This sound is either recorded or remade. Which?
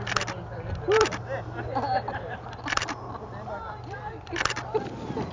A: recorded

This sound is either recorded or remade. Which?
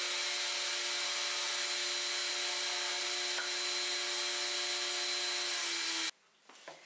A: recorded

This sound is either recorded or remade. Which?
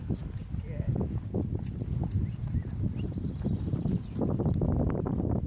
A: recorded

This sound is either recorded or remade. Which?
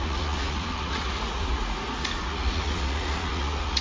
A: remade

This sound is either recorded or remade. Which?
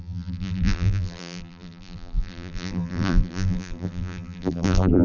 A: remade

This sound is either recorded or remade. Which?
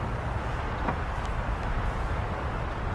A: remade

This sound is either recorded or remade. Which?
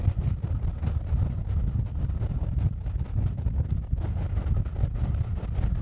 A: recorded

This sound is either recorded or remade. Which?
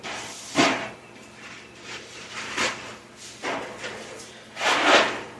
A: remade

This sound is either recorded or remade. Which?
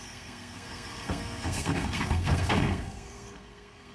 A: remade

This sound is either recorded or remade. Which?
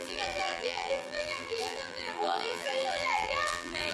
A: remade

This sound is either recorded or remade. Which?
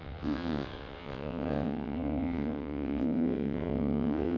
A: remade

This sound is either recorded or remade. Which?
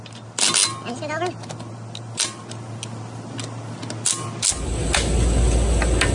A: recorded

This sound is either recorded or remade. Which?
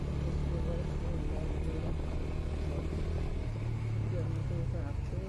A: recorded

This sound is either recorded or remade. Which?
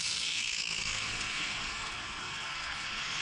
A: remade